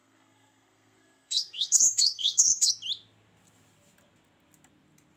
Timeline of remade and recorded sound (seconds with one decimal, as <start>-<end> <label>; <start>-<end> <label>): 0.0-2.7 remade; 2.7-5.2 recorded